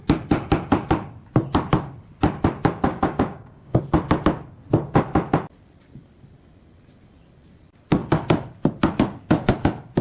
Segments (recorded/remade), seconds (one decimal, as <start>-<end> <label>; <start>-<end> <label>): 0.0-2.9 recorded; 2.9-3.8 remade; 3.8-10.0 recorded